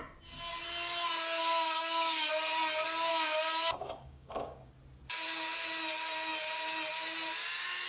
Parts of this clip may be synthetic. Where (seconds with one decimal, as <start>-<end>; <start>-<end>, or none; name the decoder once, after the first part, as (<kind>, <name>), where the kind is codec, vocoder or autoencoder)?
1.4-2.3 (codec, DAC); 3.1-4.7